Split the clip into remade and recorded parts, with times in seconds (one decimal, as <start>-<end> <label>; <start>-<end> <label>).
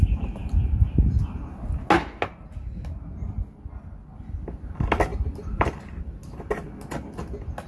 0.0-5.1 recorded; 5.1-6.0 remade; 6.0-7.7 recorded